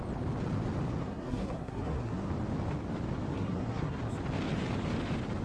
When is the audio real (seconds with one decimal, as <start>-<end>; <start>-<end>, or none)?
0.0-1.0; 2.3-3.3; 4.0-5.4